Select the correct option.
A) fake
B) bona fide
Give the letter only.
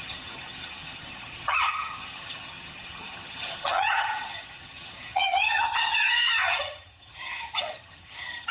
A